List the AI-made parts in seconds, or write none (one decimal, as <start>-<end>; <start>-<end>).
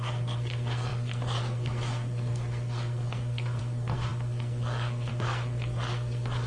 0.0-6.5